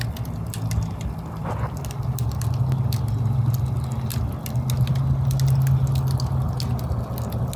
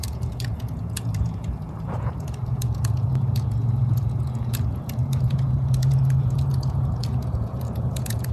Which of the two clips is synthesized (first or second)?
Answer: second